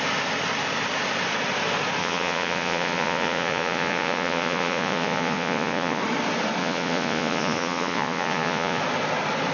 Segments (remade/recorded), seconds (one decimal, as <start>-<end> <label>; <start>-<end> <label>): 0.0-2.0 recorded; 2.0-6.0 remade; 6.0-6.6 recorded; 6.6-8.8 remade; 8.8-9.5 recorded